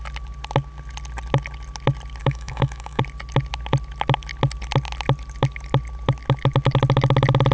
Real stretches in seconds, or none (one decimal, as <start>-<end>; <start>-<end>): 0.0-2.2; 3.0-7.5